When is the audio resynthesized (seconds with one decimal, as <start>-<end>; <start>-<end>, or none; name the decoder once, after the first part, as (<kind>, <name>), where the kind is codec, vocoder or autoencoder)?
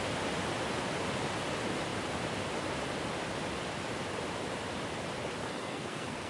5.4-6.3 (codec, SNAC)